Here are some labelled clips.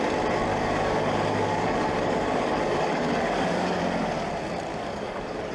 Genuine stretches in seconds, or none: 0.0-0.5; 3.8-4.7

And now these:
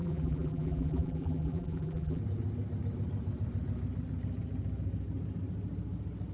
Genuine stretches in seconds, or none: 2.2-6.3

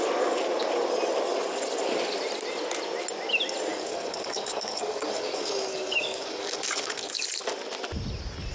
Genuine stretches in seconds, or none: 0.0-3.7; 7.2-8.5

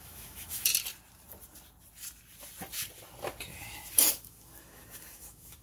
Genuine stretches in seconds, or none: 0.7-4.1

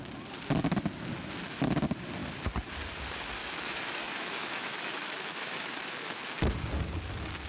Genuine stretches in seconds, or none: 0.0-3.4; 6.2-7.5